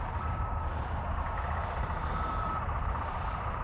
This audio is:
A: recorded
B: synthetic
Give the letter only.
B